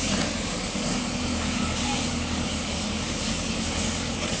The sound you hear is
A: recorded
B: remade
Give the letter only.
B